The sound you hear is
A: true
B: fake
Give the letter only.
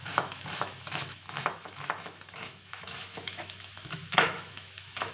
B